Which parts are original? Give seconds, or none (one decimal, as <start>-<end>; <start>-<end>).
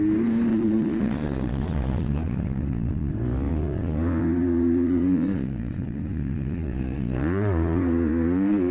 0.0-0.5; 3.1-3.5